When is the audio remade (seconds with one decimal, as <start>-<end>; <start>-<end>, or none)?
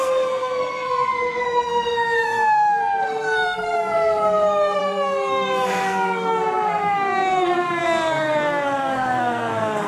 0.0-9.9